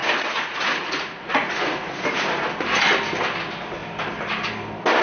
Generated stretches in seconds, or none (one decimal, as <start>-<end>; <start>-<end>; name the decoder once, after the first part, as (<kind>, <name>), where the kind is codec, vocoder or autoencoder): 0.0-2.3 (vocoder, Vocos)